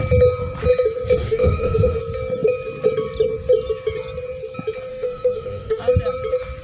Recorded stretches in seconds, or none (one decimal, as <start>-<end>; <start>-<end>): 0.0-1.2; 2.0-4.9; 5.8-6.6